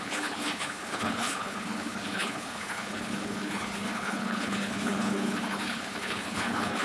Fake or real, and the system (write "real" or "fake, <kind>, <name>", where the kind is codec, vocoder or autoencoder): fake, codec, HILCodec